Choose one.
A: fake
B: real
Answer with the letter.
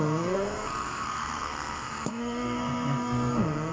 A